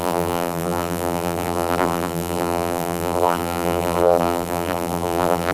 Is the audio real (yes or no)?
no